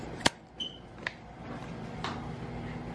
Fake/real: real